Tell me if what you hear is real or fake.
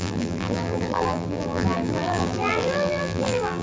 fake